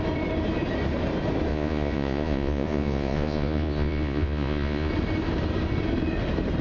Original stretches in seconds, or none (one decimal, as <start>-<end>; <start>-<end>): 0.0-1.5; 4.9-6.6